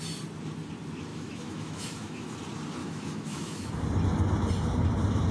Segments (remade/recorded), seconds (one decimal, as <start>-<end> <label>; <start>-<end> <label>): 0.0-1.1 recorded; 1.1-2.3 remade; 2.3-2.8 recorded; 2.8-3.7 remade; 3.7-5.3 recorded